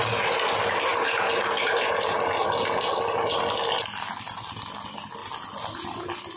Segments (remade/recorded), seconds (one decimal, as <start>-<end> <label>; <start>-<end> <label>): 0.0-6.4 recorded